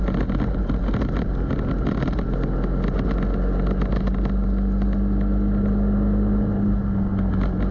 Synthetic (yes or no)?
no